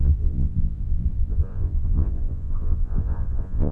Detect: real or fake fake